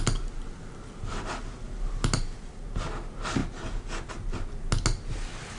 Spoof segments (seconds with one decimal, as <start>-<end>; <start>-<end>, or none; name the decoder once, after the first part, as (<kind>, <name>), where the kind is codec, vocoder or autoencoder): none